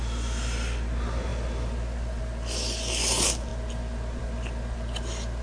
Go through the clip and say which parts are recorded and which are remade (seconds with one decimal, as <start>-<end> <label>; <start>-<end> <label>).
0.0-1.3 recorded; 1.3-2.2 remade; 2.2-5.4 recorded